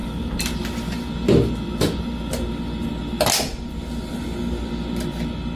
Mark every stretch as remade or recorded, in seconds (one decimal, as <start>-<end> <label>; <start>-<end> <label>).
0.0-5.6 recorded